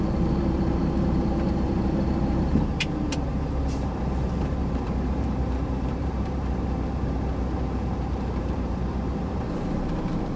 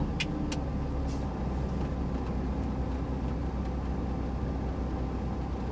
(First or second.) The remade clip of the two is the first